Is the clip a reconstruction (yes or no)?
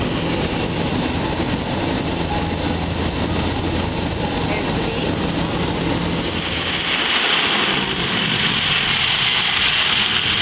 no